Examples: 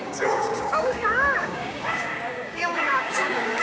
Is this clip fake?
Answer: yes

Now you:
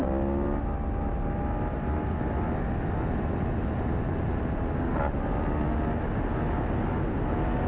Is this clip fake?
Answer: no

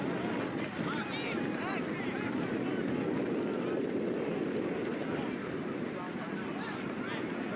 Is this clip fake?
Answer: no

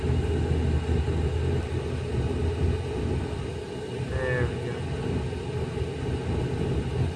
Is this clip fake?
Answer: no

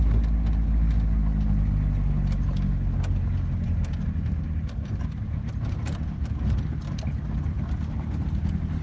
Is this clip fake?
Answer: no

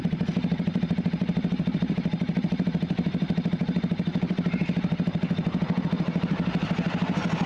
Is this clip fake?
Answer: yes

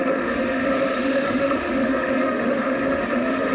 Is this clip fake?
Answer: yes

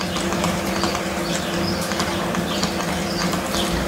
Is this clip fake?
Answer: no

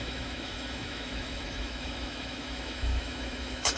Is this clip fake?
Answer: yes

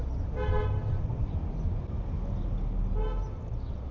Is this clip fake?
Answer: no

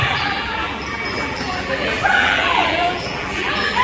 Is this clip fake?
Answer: yes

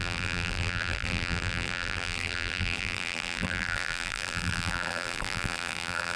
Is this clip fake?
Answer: yes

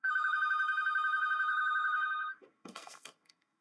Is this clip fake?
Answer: yes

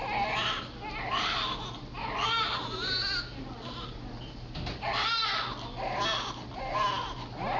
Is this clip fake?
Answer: no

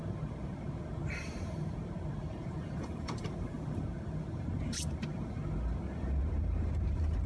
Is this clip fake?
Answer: yes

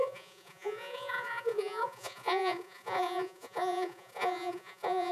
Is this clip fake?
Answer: yes